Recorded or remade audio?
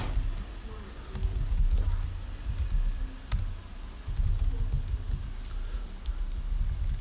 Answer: recorded